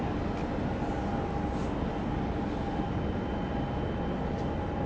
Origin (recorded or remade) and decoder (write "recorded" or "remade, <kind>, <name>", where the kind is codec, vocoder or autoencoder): recorded